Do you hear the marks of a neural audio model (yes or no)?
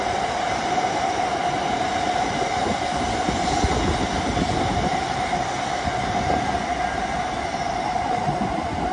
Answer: no